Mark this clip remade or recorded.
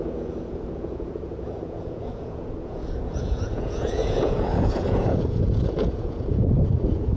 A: remade